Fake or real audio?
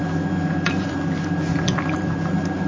real